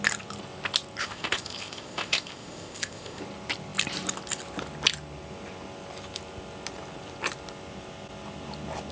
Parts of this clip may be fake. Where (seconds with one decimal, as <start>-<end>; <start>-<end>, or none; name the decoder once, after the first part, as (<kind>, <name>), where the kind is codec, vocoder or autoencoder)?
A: 1.0-3.2 (codec, ZipCodec)